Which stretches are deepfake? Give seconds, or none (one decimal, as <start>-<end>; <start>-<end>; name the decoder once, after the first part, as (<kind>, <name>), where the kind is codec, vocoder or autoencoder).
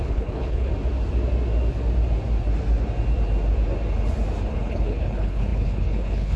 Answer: 0.0-0.7 (codec, HILCodec); 4.5-6.4